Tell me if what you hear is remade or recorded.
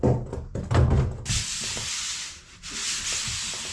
recorded